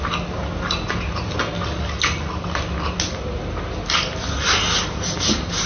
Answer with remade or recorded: recorded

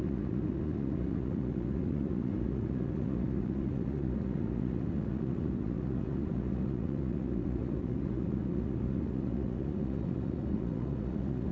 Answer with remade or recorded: remade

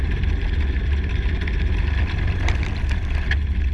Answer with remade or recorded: recorded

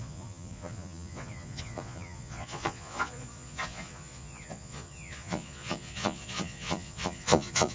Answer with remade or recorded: remade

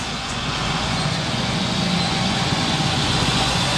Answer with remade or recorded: remade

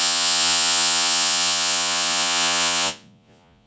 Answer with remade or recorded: remade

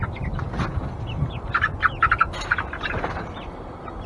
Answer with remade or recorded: recorded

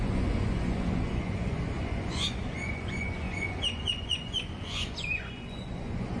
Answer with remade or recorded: remade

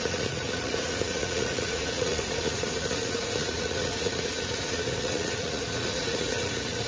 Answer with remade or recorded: remade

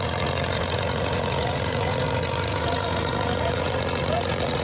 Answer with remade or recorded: remade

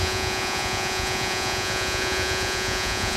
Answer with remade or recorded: remade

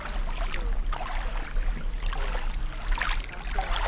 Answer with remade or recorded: recorded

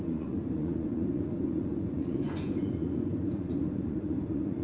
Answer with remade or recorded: remade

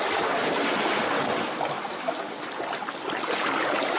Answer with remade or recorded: recorded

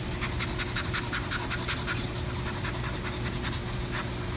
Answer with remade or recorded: recorded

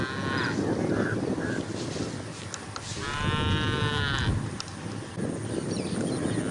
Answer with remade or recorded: recorded